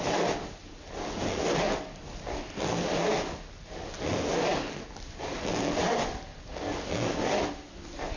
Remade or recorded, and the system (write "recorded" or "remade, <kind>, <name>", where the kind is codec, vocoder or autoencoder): recorded